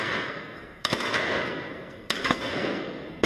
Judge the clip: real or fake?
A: fake